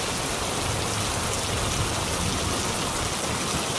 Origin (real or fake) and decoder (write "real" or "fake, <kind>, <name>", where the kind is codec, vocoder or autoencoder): real